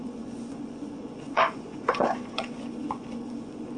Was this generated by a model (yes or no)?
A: yes